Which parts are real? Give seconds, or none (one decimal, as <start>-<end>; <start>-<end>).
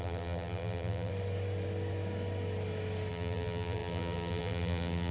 1.1-3.1